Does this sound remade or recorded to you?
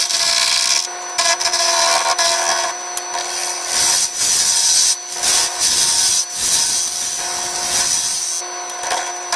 recorded